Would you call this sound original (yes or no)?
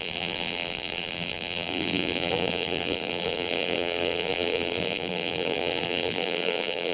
no